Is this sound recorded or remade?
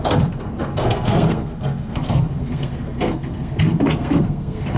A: remade